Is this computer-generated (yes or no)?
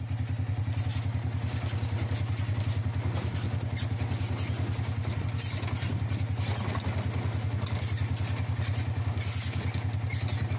no